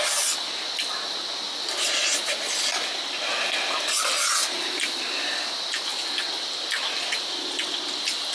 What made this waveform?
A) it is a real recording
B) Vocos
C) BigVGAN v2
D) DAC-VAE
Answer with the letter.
A